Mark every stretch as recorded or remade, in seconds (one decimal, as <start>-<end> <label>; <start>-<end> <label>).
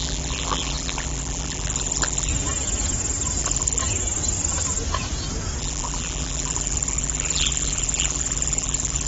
0.0-2.3 remade; 2.3-3.4 recorded; 3.4-3.8 remade; 3.8-5.6 recorded; 5.6-9.1 remade